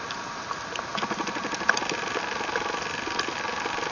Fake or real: real